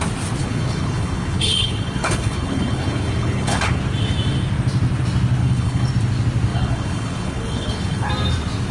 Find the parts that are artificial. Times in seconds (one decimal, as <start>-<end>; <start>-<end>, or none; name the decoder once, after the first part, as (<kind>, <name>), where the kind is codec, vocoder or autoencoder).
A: 0.4-3.8 (codec, HILCodec); 5.4-5.9; 6.5-8.1